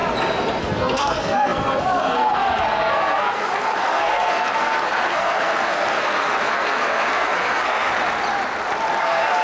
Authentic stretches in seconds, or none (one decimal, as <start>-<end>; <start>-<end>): 0.0-0.6; 7.9-9.0